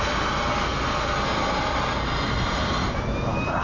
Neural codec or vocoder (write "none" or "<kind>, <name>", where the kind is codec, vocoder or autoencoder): none